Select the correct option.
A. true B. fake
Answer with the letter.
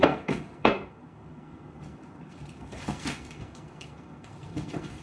B